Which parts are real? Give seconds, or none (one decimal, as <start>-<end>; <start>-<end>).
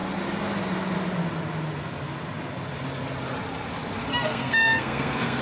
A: 0.0-4.1